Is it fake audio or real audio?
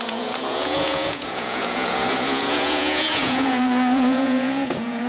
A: fake